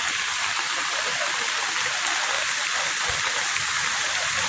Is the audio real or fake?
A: real